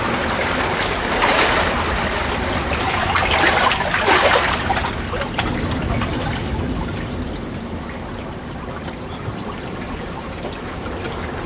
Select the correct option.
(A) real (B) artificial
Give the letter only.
A